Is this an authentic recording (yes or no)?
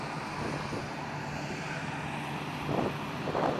yes